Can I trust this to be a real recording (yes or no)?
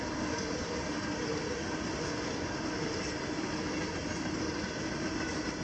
yes